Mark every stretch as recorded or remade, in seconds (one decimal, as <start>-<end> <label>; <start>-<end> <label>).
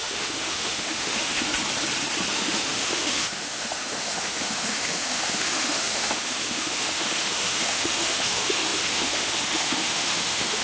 0.0-1.5 remade; 1.5-2.3 recorded; 2.3-10.6 remade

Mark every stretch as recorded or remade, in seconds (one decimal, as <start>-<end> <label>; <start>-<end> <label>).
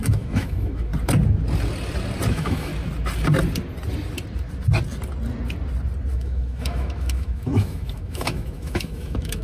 0.0-0.9 remade; 0.9-2.3 recorded; 2.3-2.7 remade; 2.7-6.1 recorded; 6.1-9.4 remade